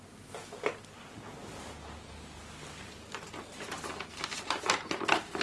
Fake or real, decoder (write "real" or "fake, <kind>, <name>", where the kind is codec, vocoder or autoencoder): real